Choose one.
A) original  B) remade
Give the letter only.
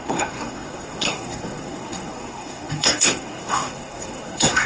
B